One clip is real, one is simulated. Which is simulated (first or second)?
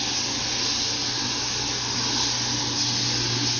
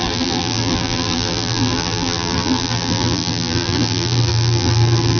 second